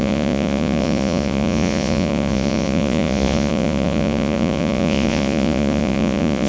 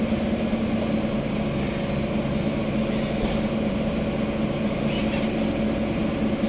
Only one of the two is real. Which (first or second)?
second